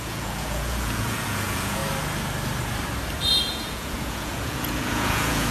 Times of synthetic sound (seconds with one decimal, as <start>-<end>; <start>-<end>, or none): 0.0-1.8; 3.4-5.5